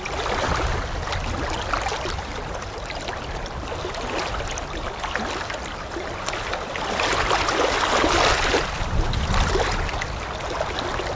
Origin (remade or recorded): recorded